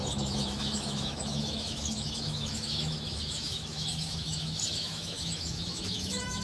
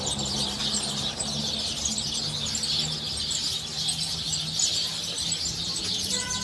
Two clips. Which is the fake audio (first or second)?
first